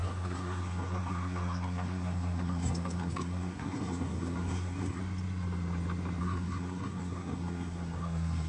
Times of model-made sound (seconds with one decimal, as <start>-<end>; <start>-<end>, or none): 0.0-5.0; 6.2-8.5

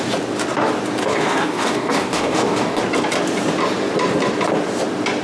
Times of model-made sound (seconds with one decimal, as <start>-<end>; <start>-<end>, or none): 1.0-2.8